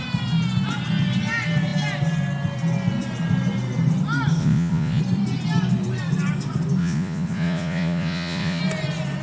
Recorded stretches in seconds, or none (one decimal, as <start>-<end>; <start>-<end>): 0.0-4.4; 5.0-6.8; 8.6-9.2